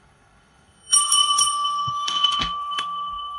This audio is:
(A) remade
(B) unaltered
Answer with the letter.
A